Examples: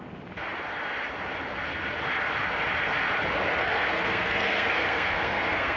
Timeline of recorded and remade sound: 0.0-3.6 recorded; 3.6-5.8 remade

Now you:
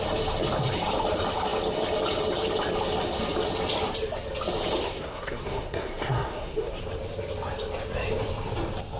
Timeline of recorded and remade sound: 0.0-4.8 recorded; 4.8-6.8 remade; 6.8-9.0 recorded

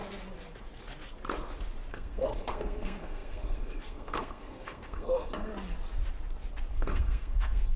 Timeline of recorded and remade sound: 0.0-1.9 recorded; 1.9-5.5 remade; 5.5-6.7 recorded; 6.7-7.8 remade